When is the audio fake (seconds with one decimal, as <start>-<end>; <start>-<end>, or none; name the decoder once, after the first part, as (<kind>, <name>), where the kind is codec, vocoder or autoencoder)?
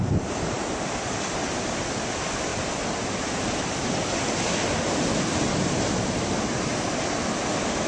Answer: none